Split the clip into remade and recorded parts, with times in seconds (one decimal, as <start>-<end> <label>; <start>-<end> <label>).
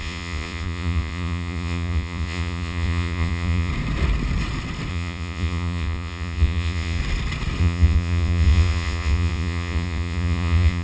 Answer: 0.0-3.7 remade; 3.7-4.9 recorded; 4.9-7.0 remade; 7.0-7.6 recorded; 7.6-10.8 remade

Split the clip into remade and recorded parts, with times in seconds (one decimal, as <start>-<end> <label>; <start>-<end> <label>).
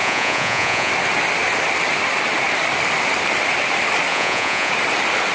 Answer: 0.0-0.9 remade; 0.9-4.1 recorded; 4.1-4.7 remade; 4.7-5.3 recorded